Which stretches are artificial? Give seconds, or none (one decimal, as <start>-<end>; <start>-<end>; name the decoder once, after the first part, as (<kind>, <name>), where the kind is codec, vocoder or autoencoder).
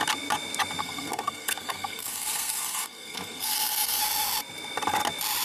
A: 0.8-4.0 (codec, SNAC)